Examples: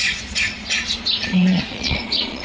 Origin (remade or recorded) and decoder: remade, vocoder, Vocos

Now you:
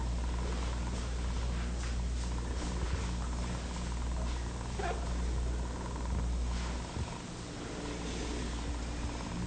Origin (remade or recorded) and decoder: recorded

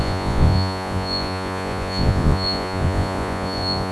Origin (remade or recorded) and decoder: remade, vocoder, Vocos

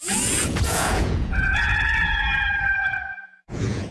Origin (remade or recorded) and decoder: remade, vocoder, Vocos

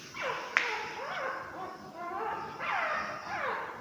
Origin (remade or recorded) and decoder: recorded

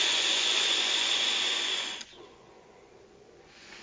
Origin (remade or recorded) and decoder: remade, vocoder, Vocos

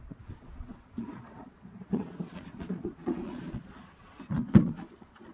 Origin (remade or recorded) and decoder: remade, vocoder, Vocos